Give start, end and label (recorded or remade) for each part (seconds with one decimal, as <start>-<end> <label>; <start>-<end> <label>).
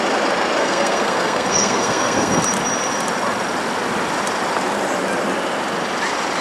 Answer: 0.0-0.6 recorded; 0.6-2.4 remade; 2.4-6.4 recorded